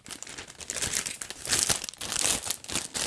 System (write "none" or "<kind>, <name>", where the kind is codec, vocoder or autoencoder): none